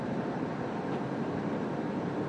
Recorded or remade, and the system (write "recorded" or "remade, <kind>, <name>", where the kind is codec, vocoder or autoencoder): remade, vocoder, BigVGAN v2